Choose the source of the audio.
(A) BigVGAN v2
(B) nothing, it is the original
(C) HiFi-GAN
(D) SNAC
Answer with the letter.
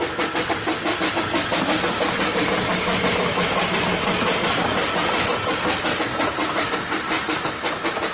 B